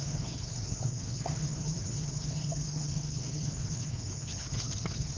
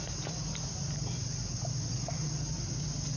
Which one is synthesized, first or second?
first